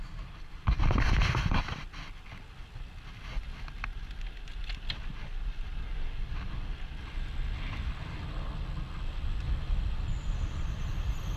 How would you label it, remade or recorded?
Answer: recorded